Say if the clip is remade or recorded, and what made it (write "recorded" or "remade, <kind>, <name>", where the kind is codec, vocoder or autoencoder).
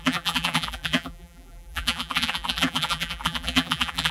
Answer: remade, vocoder, BigVGAN v2